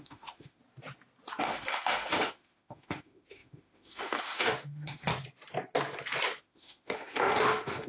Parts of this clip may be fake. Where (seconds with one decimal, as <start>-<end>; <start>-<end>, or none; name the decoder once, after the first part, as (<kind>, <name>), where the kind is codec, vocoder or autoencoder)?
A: 0.0-0.6 (autoencoder, DAC-VAE); 1.4-5.1; 6.4-7.9